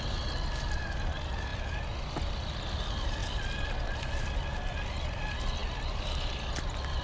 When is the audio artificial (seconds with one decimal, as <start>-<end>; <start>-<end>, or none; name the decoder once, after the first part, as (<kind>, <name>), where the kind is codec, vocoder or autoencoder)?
none